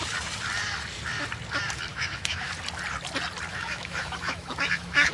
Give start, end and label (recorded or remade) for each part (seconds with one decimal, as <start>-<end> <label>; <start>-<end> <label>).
0.0-1.9 recorded; 1.9-2.5 remade; 2.5-3.5 recorded; 3.5-5.1 remade